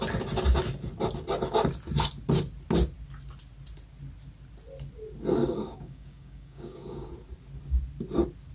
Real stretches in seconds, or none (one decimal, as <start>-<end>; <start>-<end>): 0.0-5.4; 7.1-8.5